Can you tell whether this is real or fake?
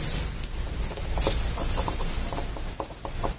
real